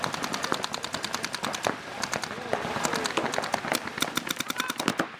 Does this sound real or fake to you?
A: real